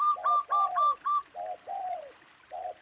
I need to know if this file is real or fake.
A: real